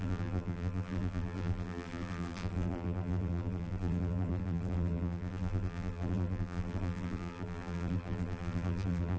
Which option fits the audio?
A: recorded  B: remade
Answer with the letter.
B